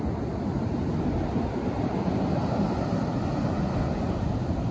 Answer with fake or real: real